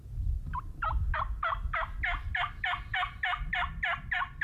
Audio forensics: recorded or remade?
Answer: recorded